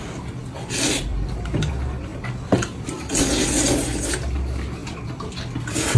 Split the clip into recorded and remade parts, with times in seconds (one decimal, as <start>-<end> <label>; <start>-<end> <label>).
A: 0.0-1.1 recorded; 1.1-1.7 remade; 1.7-6.0 recorded